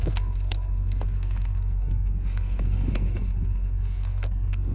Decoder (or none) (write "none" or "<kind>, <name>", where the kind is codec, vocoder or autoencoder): codec, SNAC